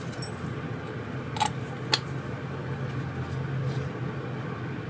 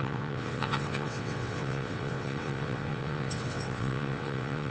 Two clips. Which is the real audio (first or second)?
first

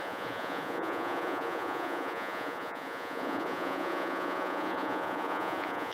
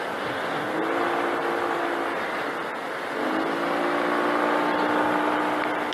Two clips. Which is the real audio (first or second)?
second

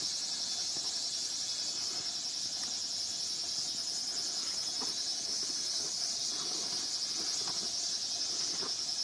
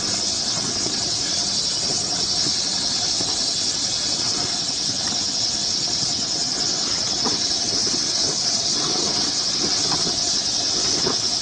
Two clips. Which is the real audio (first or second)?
first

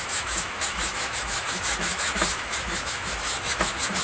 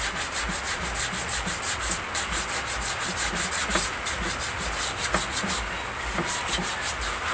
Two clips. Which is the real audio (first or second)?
second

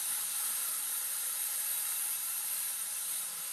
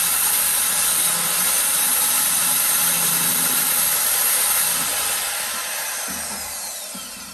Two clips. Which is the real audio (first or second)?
second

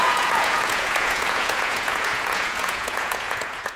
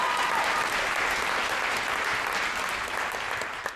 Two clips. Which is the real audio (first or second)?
second